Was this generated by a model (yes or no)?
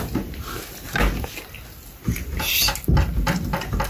no